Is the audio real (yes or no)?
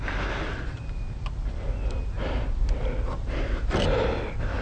yes